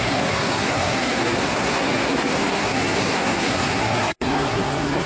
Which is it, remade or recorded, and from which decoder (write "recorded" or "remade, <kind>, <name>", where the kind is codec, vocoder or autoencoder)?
remade, codec, SNAC